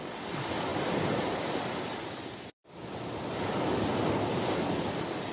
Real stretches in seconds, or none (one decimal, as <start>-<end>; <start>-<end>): 0.0-5.3